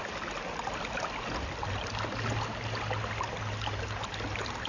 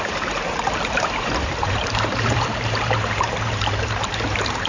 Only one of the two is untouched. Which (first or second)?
first